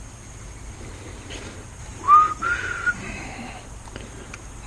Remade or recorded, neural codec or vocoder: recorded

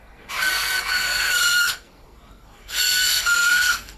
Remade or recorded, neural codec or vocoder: remade, codec, SNAC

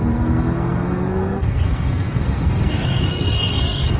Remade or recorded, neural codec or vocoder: remade, codec, SNAC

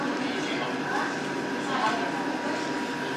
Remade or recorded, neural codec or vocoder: recorded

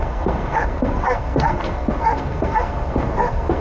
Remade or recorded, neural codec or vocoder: remade, codec, SNAC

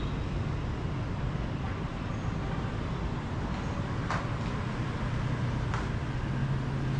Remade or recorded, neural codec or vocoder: recorded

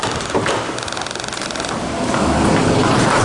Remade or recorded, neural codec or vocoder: recorded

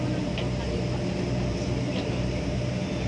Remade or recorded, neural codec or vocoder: recorded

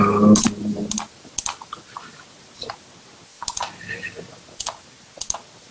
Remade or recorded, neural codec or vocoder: recorded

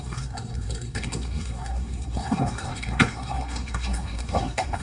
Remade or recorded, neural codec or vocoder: remade, codec, SNAC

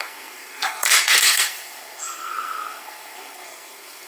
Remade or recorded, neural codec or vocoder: remade, codec, SNAC